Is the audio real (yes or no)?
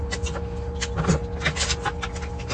yes